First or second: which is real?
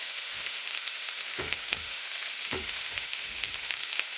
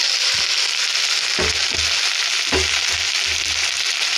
second